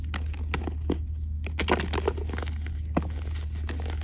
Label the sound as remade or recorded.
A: recorded